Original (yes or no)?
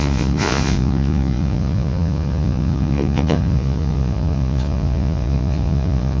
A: no